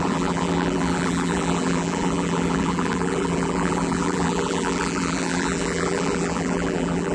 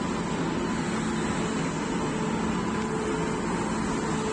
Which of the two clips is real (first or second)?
second